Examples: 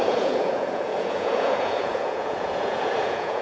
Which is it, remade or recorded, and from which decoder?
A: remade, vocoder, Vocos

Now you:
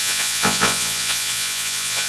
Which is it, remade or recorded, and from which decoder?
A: remade, vocoder, Vocos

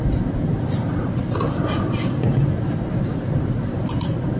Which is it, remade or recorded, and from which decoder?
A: recorded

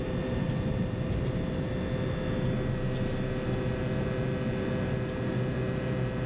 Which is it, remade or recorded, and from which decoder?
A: recorded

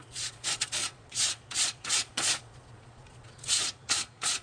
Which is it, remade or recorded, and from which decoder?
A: remade, vocoder, Vocos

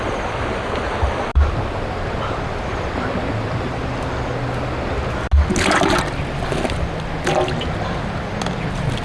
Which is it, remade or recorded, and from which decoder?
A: recorded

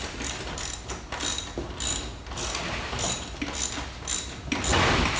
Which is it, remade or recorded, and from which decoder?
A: recorded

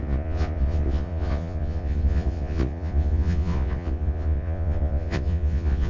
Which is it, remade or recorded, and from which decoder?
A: remade, vocoder, Vocos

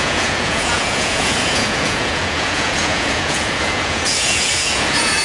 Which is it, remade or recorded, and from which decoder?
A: remade, vocoder, Vocos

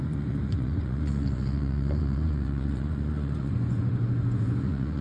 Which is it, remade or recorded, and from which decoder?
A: remade, vocoder, Vocos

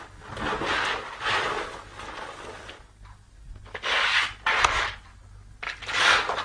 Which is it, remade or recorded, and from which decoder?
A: recorded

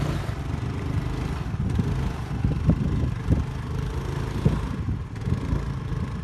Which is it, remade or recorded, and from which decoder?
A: recorded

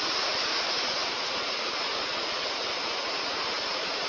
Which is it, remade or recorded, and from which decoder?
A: remade, vocoder, Vocos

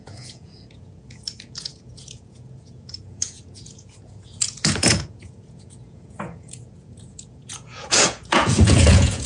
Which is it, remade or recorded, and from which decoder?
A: remade, vocoder, Vocos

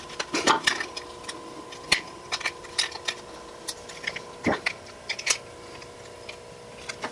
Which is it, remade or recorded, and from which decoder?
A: recorded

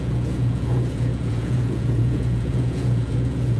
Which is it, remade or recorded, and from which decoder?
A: remade, vocoder, Vocos